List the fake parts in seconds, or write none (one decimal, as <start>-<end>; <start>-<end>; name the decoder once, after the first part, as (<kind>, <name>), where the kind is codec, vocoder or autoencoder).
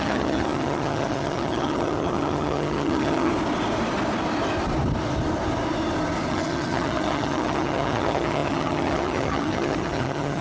0.0-3.3 (vocoder, HiFi-GAN); 6.3-10.4